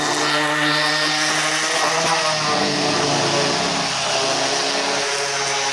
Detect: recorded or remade recorded